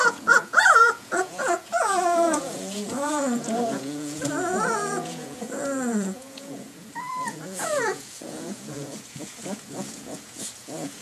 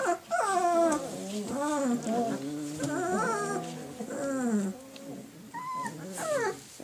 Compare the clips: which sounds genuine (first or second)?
second